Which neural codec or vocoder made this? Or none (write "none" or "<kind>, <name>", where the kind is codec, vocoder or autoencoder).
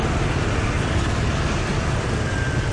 none